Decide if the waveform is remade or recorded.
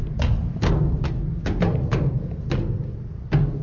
recorded